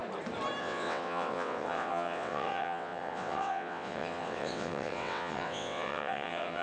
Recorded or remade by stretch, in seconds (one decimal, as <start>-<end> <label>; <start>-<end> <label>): 0.0-0.6 recorded; 0.6-6.6 remade